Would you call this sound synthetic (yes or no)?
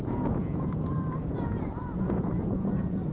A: yes